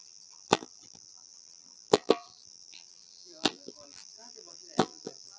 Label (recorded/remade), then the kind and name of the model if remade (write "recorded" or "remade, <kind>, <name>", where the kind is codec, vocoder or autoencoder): remade, vocoder, BigVGAN v2